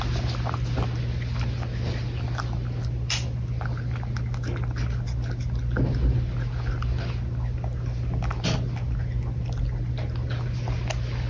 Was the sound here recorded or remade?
recorded